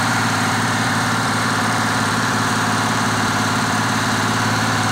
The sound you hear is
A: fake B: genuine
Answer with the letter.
A